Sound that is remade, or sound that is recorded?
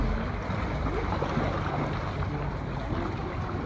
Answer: recorded